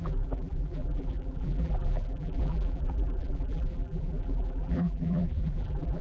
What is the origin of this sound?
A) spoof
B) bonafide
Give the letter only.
A